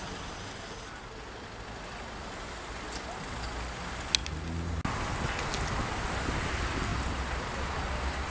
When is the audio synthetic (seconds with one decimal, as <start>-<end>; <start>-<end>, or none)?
none